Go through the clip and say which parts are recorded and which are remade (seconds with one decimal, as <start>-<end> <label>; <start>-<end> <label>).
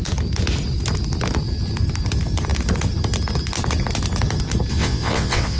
0.0-4.7 recorded; 4.7-5.6 remade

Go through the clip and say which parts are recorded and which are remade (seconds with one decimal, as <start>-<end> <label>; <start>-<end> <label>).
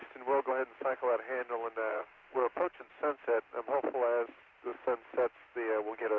0.0-1.9 recorded; 1.9-2.9 remade; 2.9-6.2 recorded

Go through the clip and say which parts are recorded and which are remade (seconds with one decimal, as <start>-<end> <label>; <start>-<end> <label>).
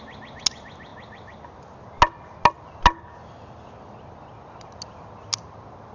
0.0-5.9 recorded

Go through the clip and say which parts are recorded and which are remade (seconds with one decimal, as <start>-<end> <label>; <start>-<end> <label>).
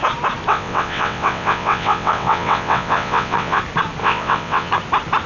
0.0-0.5 recorded; 0.5-3.6 remade; 3.6-4.0 recorded; 4.0-4.7 remade; 4.7-5.3 recorded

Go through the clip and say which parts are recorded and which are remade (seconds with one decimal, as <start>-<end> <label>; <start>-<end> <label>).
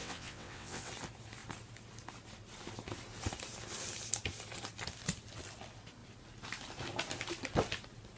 0.0-0.9 remade; 0.9-8.2 recorded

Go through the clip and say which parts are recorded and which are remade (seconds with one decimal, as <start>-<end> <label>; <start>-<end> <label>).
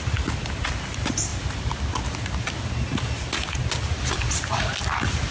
0.0-5.3 recorded